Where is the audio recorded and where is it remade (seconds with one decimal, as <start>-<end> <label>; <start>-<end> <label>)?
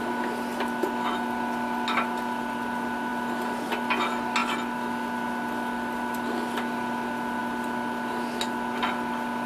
0.0-9.5 recorded